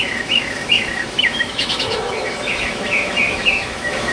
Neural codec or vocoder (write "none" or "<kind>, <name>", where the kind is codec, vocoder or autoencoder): autoencoder, DAC-VAE